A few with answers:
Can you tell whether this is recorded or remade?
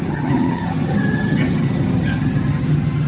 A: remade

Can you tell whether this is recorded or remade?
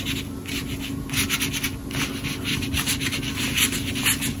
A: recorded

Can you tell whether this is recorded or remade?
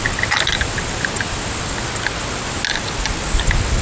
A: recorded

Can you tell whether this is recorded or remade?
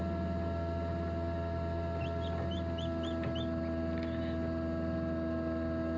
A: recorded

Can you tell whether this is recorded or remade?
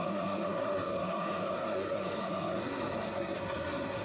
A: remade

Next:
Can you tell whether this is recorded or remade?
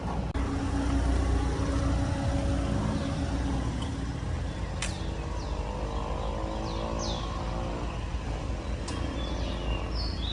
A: recorded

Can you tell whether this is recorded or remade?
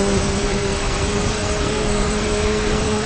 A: remade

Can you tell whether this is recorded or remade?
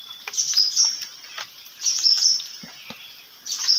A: recorded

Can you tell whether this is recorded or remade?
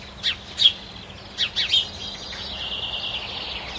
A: recorded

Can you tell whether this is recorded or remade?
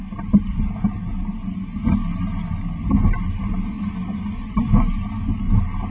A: recorded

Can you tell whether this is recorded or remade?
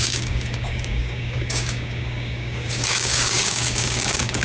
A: remade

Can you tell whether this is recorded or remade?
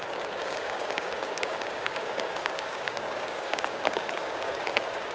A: remade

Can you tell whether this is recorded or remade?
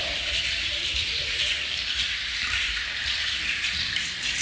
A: remade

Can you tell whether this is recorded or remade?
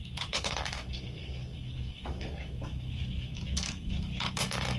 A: remade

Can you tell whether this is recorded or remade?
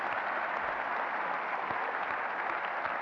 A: recorded